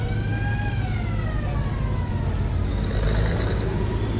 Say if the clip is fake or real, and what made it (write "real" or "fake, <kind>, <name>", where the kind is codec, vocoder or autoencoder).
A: real